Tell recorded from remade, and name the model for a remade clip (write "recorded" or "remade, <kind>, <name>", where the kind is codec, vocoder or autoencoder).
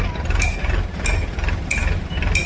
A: recorded